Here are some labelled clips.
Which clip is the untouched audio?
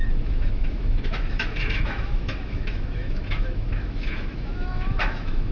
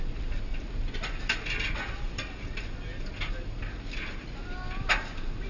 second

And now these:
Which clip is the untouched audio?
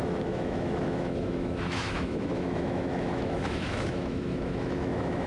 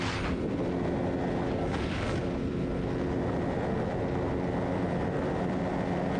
second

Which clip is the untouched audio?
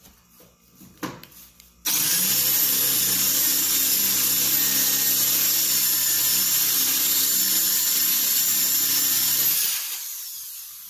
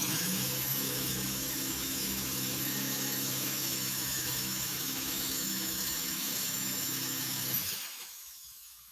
first